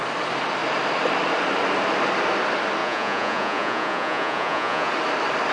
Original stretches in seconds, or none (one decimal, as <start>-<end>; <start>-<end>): 0.0-2.8; 4.9-5.5

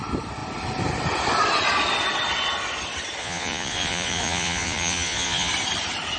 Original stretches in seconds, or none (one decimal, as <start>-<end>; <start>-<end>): 0.0-3.2; 5.5-6.2